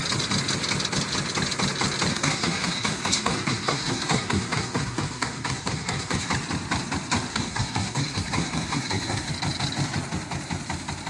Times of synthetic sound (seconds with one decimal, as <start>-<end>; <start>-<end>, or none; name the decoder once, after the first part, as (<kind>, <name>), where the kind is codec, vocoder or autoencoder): 2.1-6.3 (codec, SNAC); 7.3-9.3